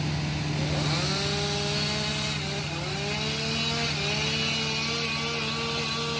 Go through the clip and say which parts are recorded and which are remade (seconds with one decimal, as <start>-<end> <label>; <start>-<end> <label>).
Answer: 0.0-6.2 recorded